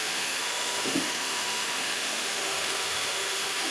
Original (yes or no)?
no